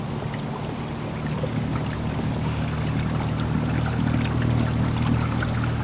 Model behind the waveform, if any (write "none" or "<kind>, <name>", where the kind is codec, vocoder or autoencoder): none